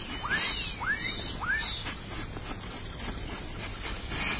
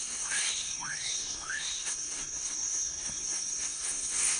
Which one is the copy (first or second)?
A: second